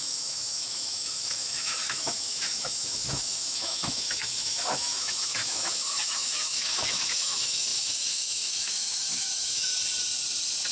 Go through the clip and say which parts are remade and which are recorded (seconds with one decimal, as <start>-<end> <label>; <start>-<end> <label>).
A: 0.0-9.7 remade; 9.7-10.7 recorded